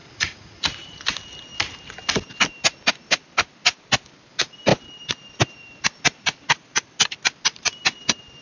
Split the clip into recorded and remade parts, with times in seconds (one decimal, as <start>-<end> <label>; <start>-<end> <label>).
0.0-1.0 remade; 1.0-8.4 recorded